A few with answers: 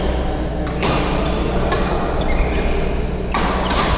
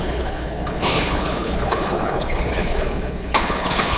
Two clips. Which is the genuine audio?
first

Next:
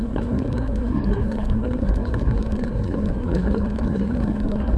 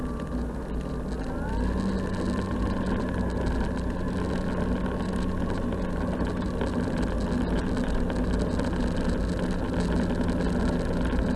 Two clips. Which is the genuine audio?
second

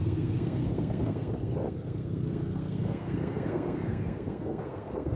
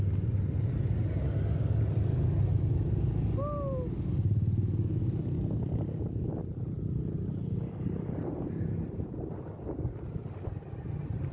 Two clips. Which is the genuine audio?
second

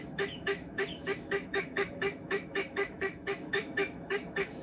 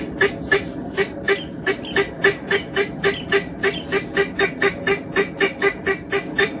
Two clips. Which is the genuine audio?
second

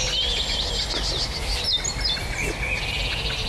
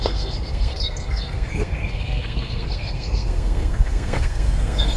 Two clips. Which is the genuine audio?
first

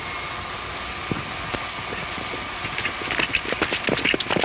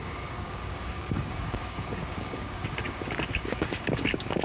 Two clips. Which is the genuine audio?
first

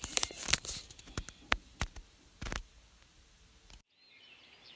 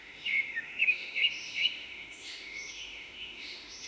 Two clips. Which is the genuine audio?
first